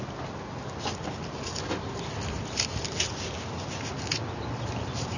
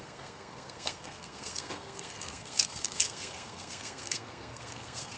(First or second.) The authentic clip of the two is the first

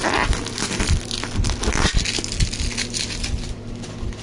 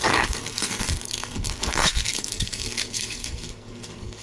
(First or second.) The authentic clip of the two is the first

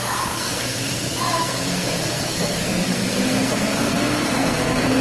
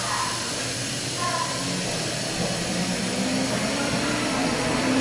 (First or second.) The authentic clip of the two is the second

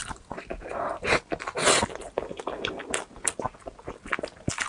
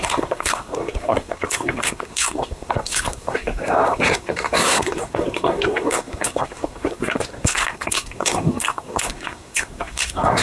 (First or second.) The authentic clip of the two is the first